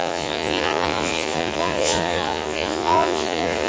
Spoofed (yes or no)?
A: yes